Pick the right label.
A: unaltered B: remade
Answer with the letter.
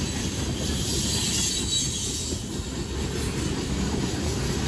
A